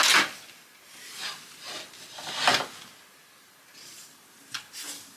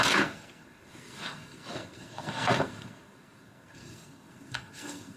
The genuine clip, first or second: first